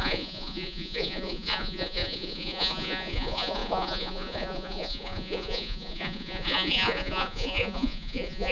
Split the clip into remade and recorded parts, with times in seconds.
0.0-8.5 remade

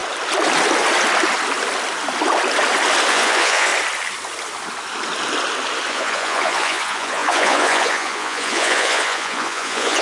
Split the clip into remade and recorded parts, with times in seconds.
0.0-3.1 recorded; 3.1-3.7 remade; 3.7-5.9 recorded; 5.9-10.0 remade

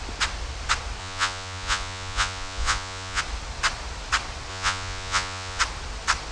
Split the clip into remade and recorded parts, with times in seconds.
0.0-1.0 recorded; 1.0-3.2 remade; 3.2-4.5 recorded; 4.5-5.6 remade; 5.6-6.3 recorded

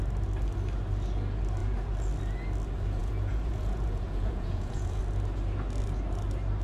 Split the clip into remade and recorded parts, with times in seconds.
0.0-3.0 recorded; 3.0-5.0 remade; 5.0-6.6 recorded